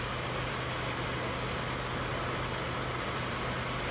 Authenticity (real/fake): real